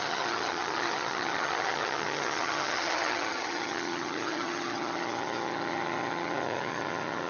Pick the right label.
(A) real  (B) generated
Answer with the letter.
B